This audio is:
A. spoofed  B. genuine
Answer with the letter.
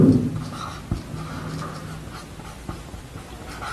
B